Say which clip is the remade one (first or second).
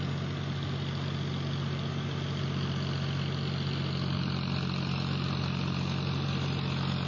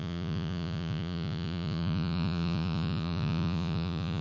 second